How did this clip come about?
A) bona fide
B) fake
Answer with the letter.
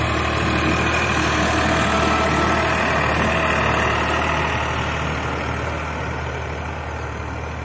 A